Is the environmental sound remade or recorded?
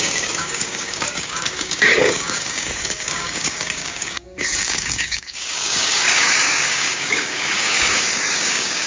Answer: remade